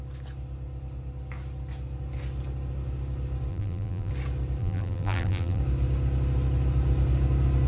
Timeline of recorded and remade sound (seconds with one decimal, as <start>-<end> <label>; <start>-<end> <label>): 0.0-3.5 recorded; 3.5-4.1 remade; 4.1-4.6 recorded; 4.6-5.6 remade; 5.6-7.7 recorded